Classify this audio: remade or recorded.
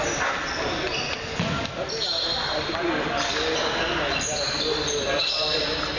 recorded